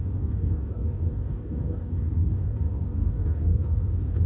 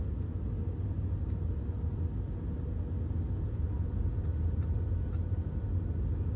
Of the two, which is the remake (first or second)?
first